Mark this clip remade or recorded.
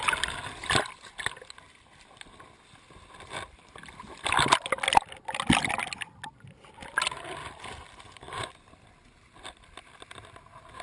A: recorded